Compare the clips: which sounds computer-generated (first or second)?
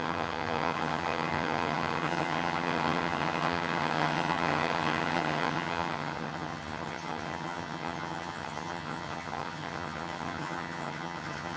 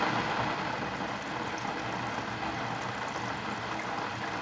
first